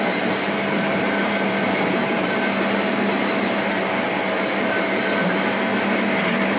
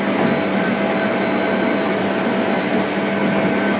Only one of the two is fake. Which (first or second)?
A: first